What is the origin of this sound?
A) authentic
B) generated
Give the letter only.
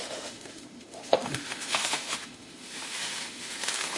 B